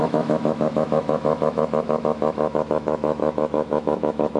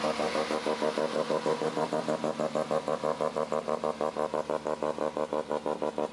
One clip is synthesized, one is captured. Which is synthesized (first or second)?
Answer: first